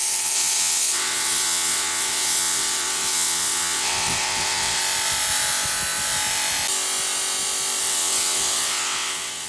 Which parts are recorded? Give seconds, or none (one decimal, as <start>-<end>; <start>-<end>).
4.8-7.8